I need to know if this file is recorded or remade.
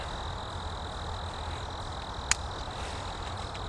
recorded